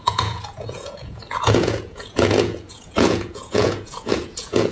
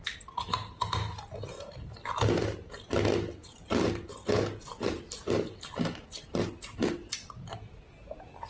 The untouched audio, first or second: second